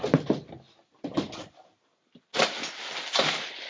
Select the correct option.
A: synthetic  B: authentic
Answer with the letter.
B